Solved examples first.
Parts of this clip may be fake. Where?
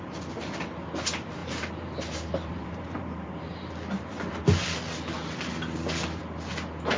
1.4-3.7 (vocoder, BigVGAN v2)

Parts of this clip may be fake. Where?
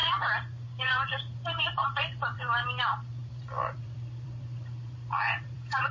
0.8-5.9 (vocoder, BigVGAN v2)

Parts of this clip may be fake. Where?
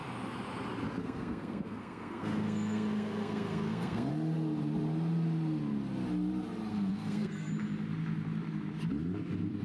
1.0-4.1 (codec, SNAC); 6.7-7.5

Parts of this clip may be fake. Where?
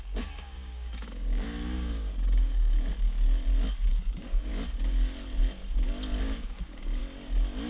0.0-2.9 (codec, DAC); 3.9-4.5; 6.2-7.0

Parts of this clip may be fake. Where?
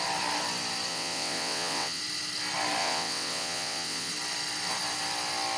0.9-2.0 (vocoder, WaveNeXt); 2.8-4.1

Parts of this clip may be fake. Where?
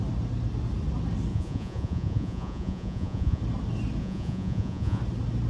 1.3-3.4 (vocoder, Vocos); 4.0-5.0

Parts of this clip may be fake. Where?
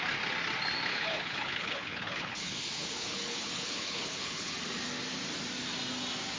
0.9-4.5 (codec, HILCodec)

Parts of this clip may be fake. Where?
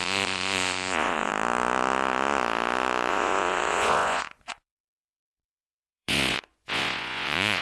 0.0-1.3 (vocoder, Vocos); 3.1-7.6